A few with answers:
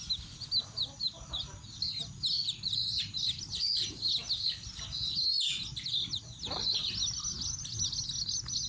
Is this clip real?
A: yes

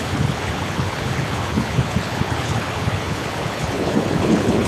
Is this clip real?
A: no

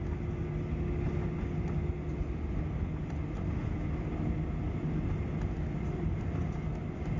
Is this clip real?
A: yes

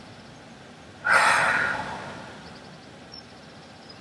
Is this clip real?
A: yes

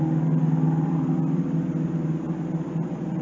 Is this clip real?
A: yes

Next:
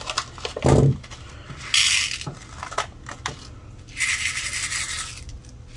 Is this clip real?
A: yes